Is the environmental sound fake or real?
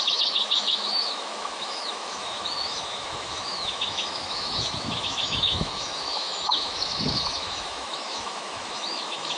fake